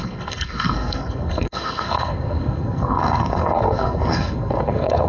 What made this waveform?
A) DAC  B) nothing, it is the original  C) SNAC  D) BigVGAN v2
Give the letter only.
C